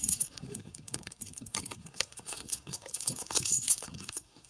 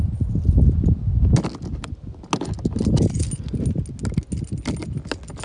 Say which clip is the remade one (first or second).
first